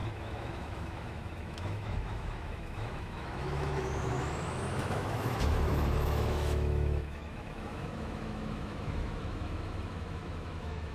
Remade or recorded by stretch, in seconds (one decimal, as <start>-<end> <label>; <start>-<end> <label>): 0.0-10.9 remade